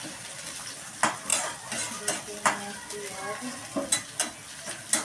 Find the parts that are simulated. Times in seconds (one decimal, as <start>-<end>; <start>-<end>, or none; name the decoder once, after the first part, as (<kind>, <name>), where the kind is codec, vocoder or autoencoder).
none